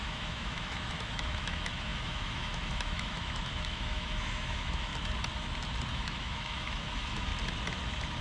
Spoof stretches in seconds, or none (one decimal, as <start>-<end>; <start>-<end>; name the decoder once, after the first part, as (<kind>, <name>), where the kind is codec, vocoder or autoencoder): 0.0-4.9 (autoencoder, DAC-VAE); 5.9-7.3

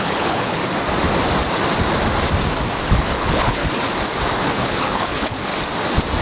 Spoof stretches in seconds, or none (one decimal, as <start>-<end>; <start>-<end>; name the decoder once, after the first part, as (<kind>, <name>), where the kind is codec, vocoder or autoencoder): 0.0-0.6 (codec, HILCodec); 2.8-3.6; 4.5-5.5

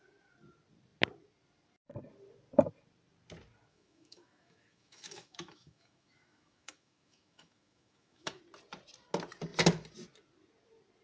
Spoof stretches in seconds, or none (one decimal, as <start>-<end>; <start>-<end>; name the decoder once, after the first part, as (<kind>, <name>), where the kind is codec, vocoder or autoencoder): 3.7-8.4 (autoencoder, DAC-VAE)

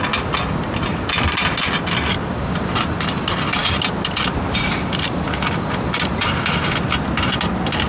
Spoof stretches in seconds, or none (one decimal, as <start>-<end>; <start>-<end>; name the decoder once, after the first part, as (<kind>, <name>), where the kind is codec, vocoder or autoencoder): none

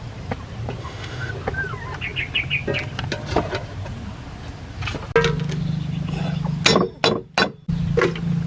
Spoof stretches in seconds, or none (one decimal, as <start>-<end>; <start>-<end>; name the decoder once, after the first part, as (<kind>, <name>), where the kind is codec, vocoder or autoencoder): 0.8-1.3 (autoencoder, DAC-VAE)

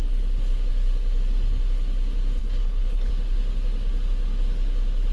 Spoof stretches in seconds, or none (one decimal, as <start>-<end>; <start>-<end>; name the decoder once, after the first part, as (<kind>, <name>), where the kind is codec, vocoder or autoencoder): 2.4-3.1 (codec, HILCodec)

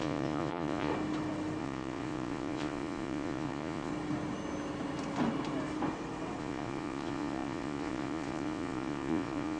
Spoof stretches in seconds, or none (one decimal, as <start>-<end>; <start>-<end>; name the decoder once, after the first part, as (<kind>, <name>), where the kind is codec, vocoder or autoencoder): 0.0-0.9 (vocoder, Vocos); 1.6-3.9; 6.4-9.6

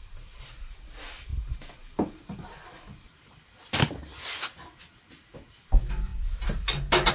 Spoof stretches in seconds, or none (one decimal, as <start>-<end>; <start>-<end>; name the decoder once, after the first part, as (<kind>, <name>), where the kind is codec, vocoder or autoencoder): none